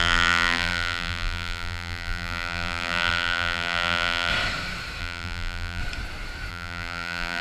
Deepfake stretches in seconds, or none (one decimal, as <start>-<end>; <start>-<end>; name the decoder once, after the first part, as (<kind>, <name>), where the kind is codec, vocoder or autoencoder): 0.0-4.3 (vocoder, BigVGAN v2); 5.0-5.8; 6.5-7.4